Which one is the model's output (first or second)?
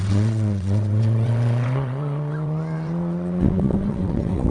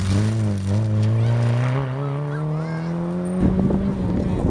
first